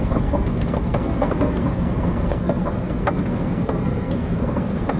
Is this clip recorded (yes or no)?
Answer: no